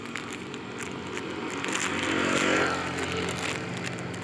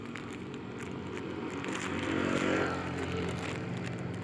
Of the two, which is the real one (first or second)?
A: first